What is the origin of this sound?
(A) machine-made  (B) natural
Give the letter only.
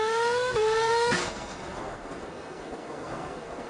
A